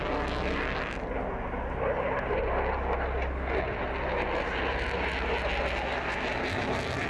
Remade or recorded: recorded